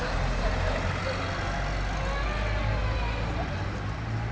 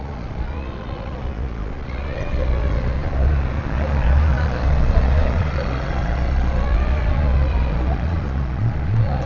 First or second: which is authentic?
first